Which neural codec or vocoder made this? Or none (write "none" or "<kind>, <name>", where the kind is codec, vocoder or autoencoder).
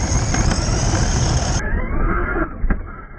none